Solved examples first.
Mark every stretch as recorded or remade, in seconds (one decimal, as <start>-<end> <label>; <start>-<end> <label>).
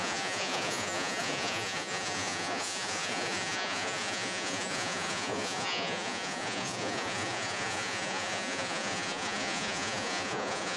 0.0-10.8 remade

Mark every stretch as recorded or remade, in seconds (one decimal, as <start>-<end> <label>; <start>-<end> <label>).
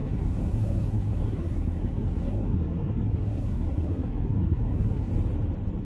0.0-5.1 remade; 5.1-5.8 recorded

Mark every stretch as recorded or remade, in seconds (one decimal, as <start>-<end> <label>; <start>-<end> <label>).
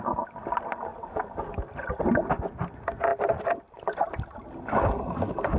0.0-5.6 recorded